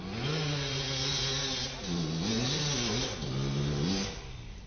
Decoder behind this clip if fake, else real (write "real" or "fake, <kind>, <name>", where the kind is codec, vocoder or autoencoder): real